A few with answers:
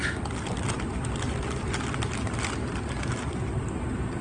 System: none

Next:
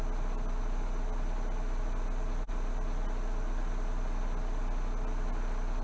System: none